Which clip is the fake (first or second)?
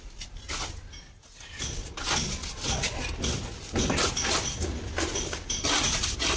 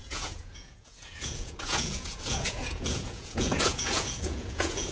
second